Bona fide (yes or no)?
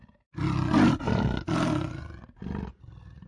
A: yes